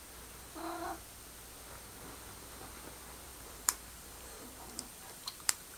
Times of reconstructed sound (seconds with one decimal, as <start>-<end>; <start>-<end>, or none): 3.3-5.8